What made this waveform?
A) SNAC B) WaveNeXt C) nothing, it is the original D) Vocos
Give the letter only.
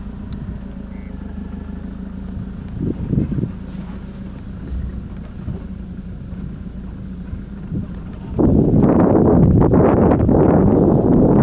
C